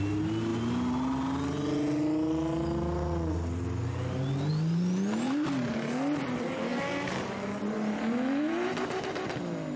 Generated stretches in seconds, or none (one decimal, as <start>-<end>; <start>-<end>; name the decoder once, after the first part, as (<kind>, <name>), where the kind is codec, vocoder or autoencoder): none